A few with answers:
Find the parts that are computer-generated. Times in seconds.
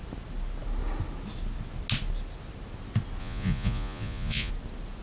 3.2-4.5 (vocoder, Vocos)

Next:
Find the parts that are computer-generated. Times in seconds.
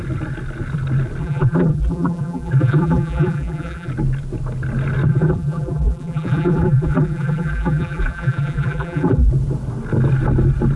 1.2-3.9 (vocoder, BigVGAN v2); 5.1-9.3